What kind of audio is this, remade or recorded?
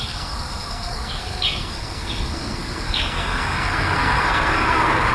remade